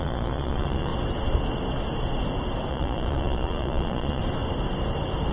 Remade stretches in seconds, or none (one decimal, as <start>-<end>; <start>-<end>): 0.0-0.9; 2.7-4.2